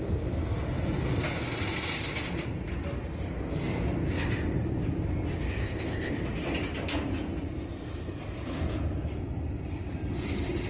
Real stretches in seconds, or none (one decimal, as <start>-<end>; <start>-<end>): 0.0-5.6; 6.1-10.7